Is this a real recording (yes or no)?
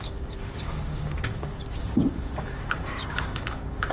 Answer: no